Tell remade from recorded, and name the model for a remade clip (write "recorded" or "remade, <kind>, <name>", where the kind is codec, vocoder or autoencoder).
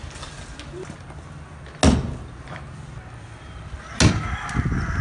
recorded